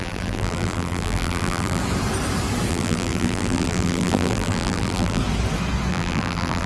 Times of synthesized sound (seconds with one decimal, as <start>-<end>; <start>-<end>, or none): 0.0-1.8; 2.7-5.2; 5.9-6.7